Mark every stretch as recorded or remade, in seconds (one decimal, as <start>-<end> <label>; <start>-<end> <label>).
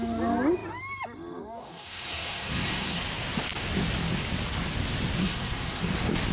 0.0-1.6 recorded; 1.6-3.0 remade; 3.0-5.2 recorded; 5.2-5.8 remade; 5.8-6.3 recorded